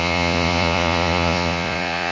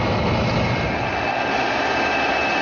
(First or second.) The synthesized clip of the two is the first